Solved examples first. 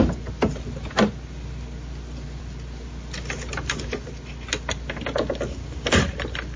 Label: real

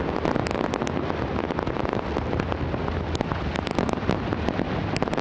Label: real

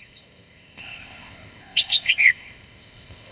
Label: fake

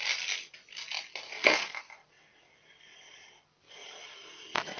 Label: real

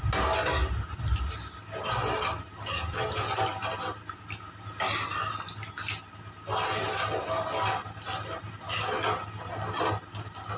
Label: real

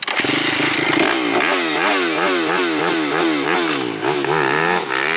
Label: real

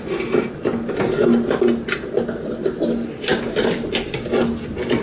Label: real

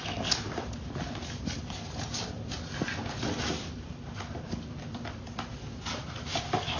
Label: real